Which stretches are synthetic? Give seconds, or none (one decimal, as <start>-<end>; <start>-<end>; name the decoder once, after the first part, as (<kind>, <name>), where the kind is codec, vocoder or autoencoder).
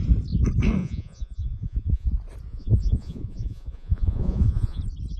0.8-2.1 (vocoder, Vocos); 2.5-4.8